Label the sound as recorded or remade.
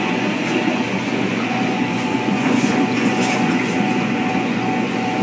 remade